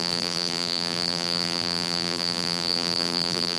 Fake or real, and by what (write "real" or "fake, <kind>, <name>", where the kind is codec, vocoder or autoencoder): fake, vocoder, BigVGAN v2